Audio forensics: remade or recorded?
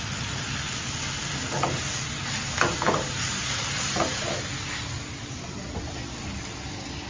recorded